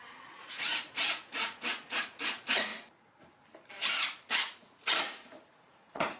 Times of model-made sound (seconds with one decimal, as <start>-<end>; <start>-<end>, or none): 0.0-2.7; 4.3-6.2